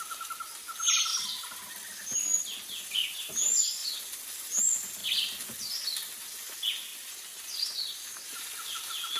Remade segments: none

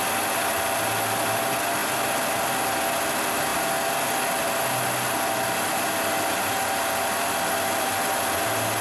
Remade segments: none

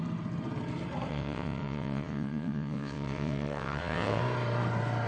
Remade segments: 1.1-4.2 (vocoder, WaveNeXt)

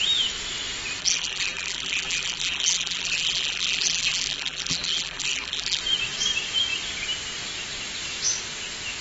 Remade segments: 1.0-5.8 (vocoder, BigVGAN v2)

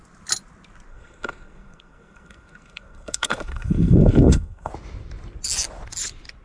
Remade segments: 0.9-4.7 (codec, SNAC)

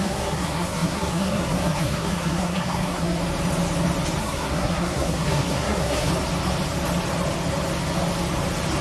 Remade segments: 0.0-3.2 (codec, SNAC); 4.2-6.1